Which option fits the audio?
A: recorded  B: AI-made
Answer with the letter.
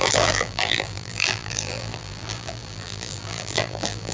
B